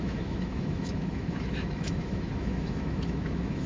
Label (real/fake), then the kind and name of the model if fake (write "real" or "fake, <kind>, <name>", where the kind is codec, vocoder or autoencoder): fake, autoencoder, DAC-VAE